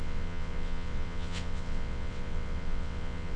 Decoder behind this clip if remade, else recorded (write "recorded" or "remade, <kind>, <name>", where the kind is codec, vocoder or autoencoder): remade, vocoder, WaveNeXt